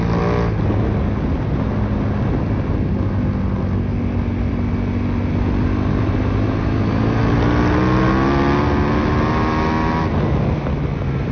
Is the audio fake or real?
real